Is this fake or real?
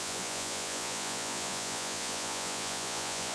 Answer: fake